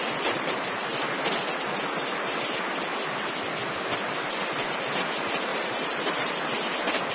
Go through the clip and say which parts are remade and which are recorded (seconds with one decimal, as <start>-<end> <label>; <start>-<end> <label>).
0.0-5.5 recorded; 5.5-6.3 remade; 6.3-7.1 recorded